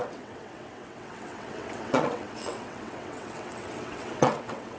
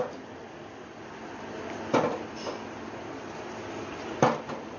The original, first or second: second